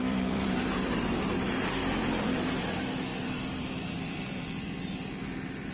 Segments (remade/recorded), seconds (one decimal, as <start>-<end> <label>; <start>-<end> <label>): 0.0-1.3 remade; 1.3-1.8 recorded; 1.8-2.5 remade; 2.5-3.1 recorded; 3.1-5.1 remade; 5.1-5.7 recorded